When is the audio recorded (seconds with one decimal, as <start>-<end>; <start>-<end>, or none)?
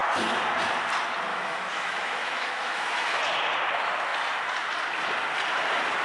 0.0-1.3; 3.2-6.0